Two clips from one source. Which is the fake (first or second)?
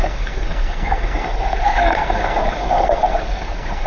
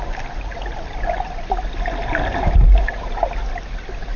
first